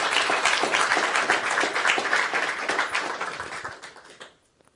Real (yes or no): yes